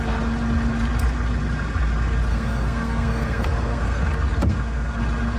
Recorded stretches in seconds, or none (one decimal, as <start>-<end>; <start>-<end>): 0.0-2.3; 4.0-4.5; 5.0-5.4